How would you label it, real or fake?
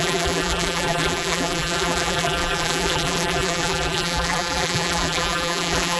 fake